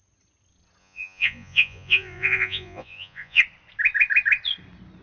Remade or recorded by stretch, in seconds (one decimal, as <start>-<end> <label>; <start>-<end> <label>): 0.0-0.8 recorded; 0.8-3.4 remade; 3.4-5.0 recorded